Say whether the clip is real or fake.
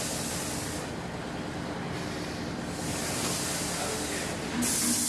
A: real